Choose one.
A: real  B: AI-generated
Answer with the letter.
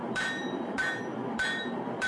B